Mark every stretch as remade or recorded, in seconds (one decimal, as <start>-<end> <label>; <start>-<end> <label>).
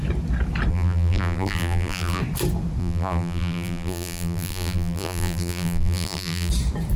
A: 0.0-0.7 recorded; 0.7-2.2 remade; 2.2-2.8 recorded; 2.8-6.5 remade; 6.5-7.0 recorded